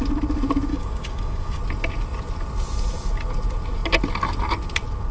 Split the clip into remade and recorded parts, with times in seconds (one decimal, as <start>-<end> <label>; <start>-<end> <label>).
0.0-0.7 recorded; 0.7-1.6 remade; 1.6-5.1 recorded

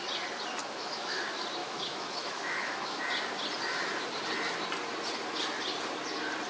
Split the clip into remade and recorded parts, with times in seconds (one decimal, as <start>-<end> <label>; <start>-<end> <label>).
0.0-0.6 recorded; 0.6-1.2 remade; 1.2-1.6 recorded; 1.6-3.0 remade; 3.0-6.5 recorded